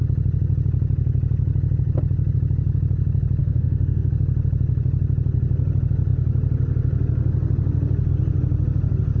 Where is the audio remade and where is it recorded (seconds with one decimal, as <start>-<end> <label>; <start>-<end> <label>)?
0.0-3.4 recorded; 3.4-4.1 remade; 4.1-9.2 recorded